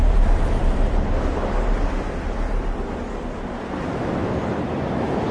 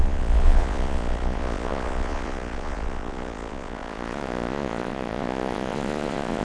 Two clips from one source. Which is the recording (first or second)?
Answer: first